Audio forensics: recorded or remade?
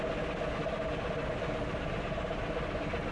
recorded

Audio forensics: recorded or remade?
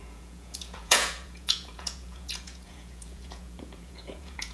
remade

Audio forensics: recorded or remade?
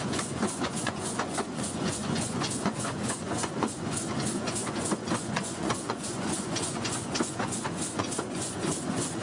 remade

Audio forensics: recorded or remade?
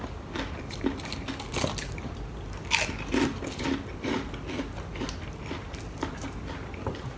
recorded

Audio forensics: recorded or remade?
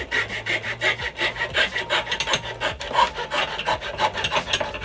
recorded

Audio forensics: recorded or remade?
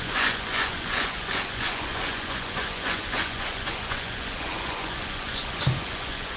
remade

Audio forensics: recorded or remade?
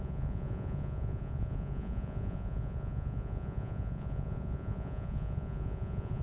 remade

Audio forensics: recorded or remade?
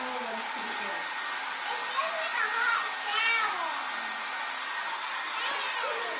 recorded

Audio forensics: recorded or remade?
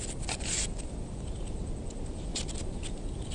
recorded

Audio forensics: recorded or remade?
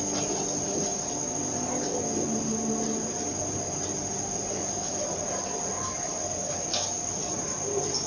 recorded